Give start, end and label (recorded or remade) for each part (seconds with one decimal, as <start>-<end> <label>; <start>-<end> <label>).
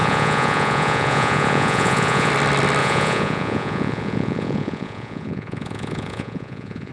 0.0-2.3 remade; 2.3-2.8 recorded; 2.8-6.9 remade